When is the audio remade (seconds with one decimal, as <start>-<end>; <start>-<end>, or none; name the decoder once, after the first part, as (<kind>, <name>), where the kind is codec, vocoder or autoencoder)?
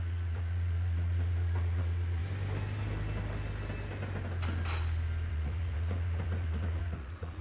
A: 0.0-2.2 (vocoder, Vocos); 5.3-7.4